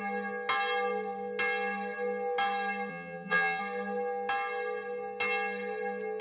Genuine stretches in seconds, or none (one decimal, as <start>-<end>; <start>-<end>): 0.0-2.9; 3.6-6.2